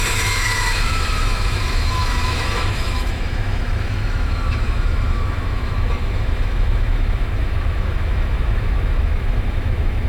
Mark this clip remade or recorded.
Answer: remade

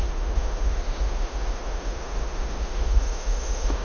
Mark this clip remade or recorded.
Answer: remade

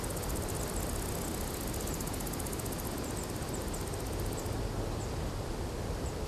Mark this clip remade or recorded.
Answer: recorded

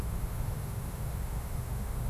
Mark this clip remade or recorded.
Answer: remade